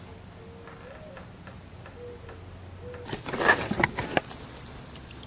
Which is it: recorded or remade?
recorded